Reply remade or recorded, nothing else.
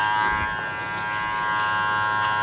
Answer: recorded